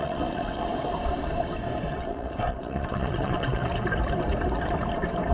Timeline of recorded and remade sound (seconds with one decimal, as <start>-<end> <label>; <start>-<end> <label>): 0.0-0.7 remade; 0.7-1.9 recorded; 1.9-3.6 remade; 3.6-5.3 recorded